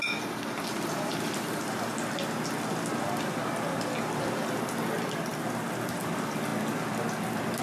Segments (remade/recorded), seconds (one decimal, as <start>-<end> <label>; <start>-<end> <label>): 0.0-1.9 remade; 1.9-3.0 recorded; 3.0-6.5 remade; 6.5-7.6 recorded